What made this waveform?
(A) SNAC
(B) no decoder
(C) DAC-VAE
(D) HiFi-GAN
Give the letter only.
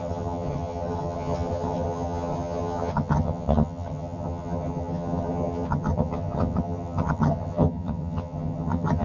D